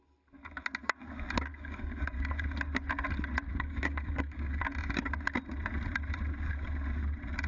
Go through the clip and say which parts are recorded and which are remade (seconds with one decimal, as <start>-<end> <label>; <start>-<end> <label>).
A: 0.0-1.5 recorded; 1.5-2.4 remade; 2.4-3.5 recorded; 3.5-4.6 remade; 4.6-7.5 recorded